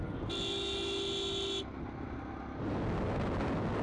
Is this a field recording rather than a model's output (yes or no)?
yes